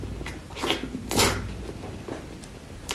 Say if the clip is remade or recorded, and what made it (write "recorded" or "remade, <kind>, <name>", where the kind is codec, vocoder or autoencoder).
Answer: recorded